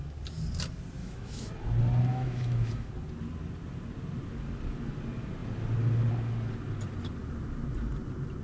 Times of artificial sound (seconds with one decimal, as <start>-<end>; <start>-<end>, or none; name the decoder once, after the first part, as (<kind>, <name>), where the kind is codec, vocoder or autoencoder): 1.0-1.5 (autoencoder, DAC-VAE); 2.1-2.9